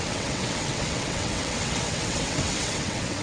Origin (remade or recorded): remade